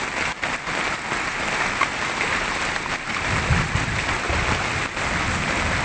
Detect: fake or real real